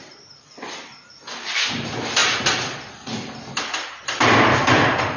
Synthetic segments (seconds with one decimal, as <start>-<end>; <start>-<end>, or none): none